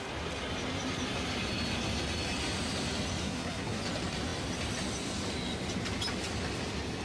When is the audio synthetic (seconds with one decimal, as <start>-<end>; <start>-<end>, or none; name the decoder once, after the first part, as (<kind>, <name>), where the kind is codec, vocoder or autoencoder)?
3.2-3.8 (codec, SNAC)